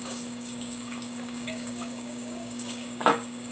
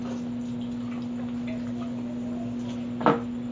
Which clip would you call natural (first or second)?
second